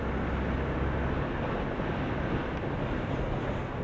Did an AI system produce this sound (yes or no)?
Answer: no